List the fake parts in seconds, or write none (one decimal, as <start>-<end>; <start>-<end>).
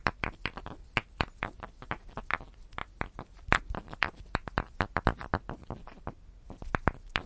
0.0-1.4